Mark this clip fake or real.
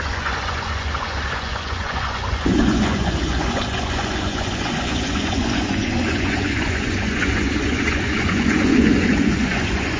fake